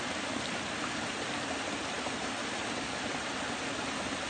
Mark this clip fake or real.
real